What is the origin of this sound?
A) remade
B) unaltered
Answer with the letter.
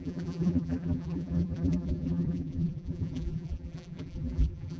A